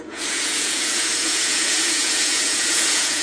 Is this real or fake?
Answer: fake